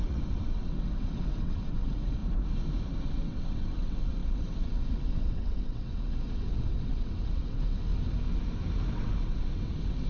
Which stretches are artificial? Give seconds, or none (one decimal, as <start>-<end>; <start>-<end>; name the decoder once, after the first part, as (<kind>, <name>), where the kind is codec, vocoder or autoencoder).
0.0-2.2 (vocoder, WaveNeXt); 3.2-7.9; 8.9-10.1